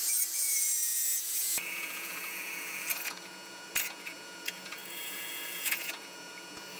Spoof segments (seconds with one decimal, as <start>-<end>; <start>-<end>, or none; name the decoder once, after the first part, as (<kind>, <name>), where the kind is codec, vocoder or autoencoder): 0.0-6.8 (vocoder, Vocos)